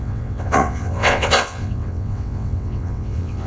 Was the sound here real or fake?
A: fake